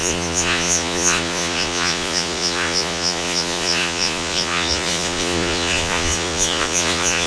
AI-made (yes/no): yes